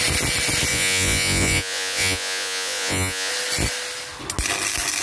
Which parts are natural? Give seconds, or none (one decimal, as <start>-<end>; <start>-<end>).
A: 0.0-0.7; 3.3-5.0